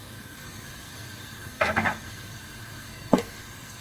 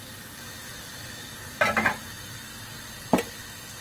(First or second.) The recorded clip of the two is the second